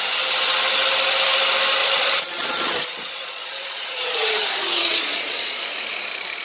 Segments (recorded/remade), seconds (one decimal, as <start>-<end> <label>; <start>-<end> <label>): 0.0-1.8 recorded; 1.8-5.6 remade; 5.6-6.4 recorded